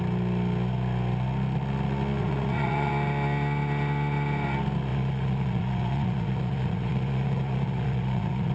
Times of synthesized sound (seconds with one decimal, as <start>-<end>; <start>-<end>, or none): 2.2-2.9; 4.9-8.5